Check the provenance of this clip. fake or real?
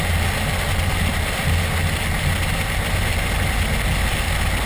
real